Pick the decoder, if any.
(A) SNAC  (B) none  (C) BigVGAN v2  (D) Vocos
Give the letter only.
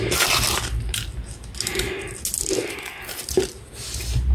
B